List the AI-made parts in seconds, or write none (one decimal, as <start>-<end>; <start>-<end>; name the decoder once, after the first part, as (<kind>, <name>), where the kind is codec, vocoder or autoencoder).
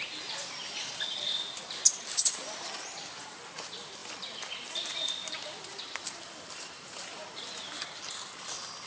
1.9-2.6 (vocoder, BigVGAN v2); 4.0-7.3